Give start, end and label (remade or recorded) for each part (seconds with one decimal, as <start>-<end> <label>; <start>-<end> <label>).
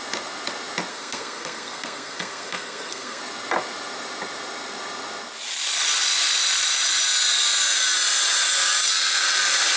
0.0-0.9 recorded; 0.9-3.2 remade; 3.2-9.8 recorded